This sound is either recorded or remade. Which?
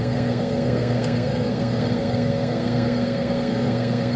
remade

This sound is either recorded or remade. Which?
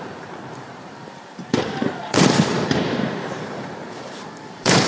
remade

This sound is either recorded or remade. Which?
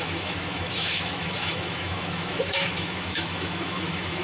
remade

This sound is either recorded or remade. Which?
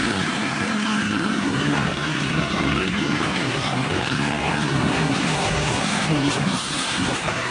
remade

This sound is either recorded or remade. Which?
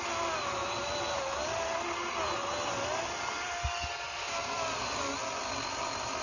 recorded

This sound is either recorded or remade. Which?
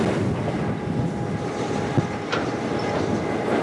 recorded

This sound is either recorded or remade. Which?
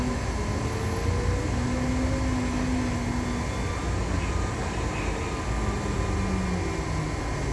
recorded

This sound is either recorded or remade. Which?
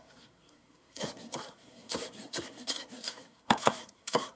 remade